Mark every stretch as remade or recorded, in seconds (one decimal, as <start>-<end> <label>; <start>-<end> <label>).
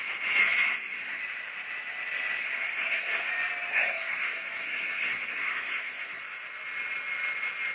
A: 0.0-0.4 recorded; 0.4-1.2 remade; 1.2-2.4 recorded; 2.4-3.3 remade; 3.3-3.7 recorded; 3.7-6.2 remade; 6.2-7.7 recorded